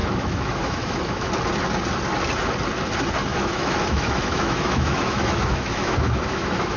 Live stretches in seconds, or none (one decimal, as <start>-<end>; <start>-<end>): 1.3-3.3